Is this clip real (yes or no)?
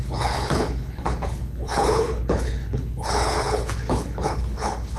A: no